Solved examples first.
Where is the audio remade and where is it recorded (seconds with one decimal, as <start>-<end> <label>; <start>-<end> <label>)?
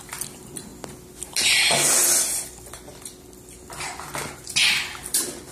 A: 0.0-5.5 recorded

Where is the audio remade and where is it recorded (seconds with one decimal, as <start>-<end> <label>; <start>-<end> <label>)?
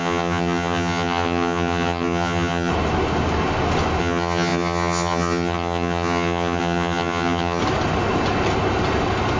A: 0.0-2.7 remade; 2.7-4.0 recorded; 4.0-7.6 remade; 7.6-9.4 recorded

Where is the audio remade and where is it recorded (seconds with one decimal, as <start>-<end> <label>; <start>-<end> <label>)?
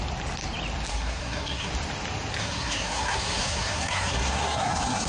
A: 0.0-0.9 recorded; 0.9-1.7 remade; 1.7-2.4 recorded; 2.4-5.1 remade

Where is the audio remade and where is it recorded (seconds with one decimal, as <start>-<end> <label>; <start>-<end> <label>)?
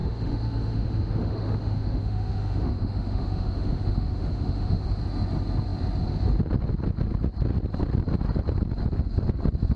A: 0.0-5.0 remade; 5.0-9.8 recorded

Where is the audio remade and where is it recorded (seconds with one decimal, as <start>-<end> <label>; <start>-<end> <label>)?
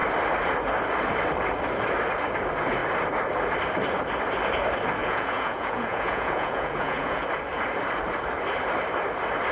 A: 0.0-5.0 recorded; 5.0-7.2 remade; 7.2-9.5 recorded